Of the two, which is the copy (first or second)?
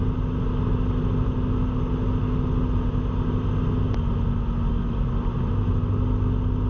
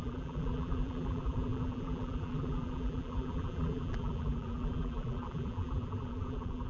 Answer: second